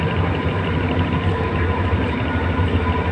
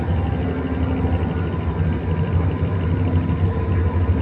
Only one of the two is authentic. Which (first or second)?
second